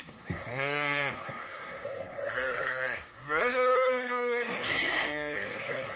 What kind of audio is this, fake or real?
fake